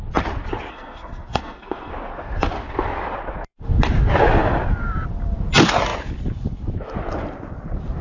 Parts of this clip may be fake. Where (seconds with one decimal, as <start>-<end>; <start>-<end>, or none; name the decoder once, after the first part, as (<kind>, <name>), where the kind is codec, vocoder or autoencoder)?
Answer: 0.7-1.9 (codec, SNAC)